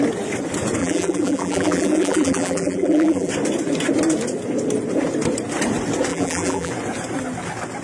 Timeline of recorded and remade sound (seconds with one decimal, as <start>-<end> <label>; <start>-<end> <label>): 0.0-0.8 recorded; 0.8-3.3 remade; 3.3-6.1 recorded; 6.1-6.7 remade; 6.7-7.8 recorded

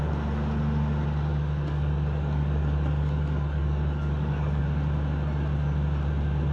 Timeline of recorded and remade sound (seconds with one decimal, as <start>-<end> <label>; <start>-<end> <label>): 0.0-1.3 recorded; 1.3-4.6 remade; 4.6-6.5 recorded

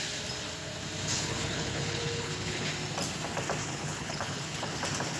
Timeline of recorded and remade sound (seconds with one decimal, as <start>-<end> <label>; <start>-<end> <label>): 0.0-1.1 recorded; 1.1-2.7 remade; 2.7-3.6 recorded; 3.6-4.7 remade; 4.7-5.2 recorded

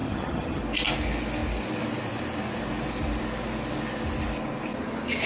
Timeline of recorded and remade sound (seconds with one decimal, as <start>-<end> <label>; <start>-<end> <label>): 0.0-0.6 remade; 0.6-5.3 recorded

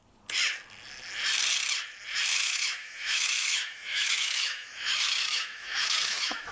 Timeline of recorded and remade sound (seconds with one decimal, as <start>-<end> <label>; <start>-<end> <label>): 0.0-2.3 recorded; 2.3-6.5 remade

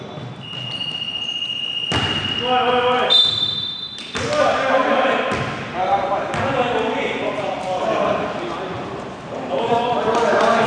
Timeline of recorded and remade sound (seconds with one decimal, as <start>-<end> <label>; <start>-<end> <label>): 0.0-4.8 recorded; 4.8-9.5 remade; 9.5-10.7 recorded

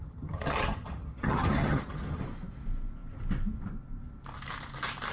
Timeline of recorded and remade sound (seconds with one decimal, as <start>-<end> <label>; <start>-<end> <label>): 0.0-2.2 remade; 2.2-5.1 recorded